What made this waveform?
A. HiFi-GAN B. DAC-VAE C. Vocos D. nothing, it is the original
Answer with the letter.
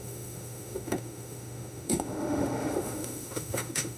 B